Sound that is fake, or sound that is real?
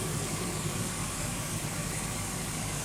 fake